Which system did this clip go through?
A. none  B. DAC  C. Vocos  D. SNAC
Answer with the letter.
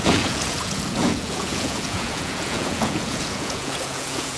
C